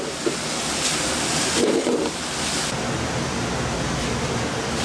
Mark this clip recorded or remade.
recorded